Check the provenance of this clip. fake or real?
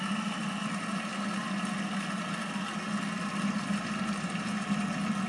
real